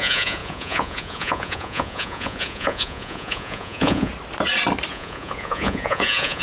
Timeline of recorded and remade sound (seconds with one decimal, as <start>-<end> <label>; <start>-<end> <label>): 0.0-4.1 remade; 4.1-4.9 recorded; 4.9-6.4 remade